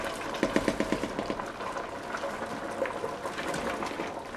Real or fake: real